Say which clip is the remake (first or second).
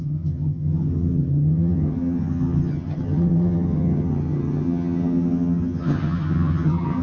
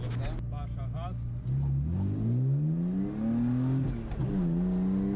first